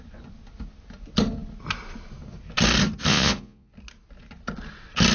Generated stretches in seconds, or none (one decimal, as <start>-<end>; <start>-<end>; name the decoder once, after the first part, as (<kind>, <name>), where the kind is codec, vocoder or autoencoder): 3.1-3.7 (vocoder, Vocos)